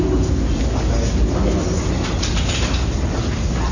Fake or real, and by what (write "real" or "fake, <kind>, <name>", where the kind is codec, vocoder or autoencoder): real